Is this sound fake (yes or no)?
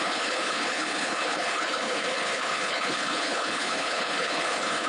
yes